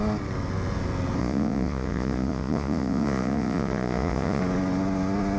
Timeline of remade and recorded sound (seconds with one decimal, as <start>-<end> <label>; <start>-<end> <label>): 0.0-1.2 recorded; 1.2-4.4 remade; 4.4-5.4 recorded